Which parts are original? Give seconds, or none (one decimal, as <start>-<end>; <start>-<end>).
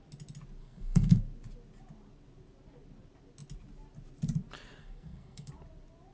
0.0-0.6; 1.2-4.8; 5.5-6.1